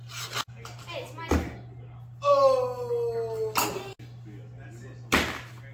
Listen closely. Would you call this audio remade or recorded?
recorded